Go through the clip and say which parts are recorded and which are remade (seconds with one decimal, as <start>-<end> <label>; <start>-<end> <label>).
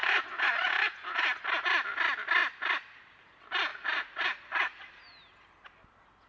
0.0-1.4 remade; 1.4-3.7 recorded; 3.7-5.0 remade; 5.0-6.3 recorded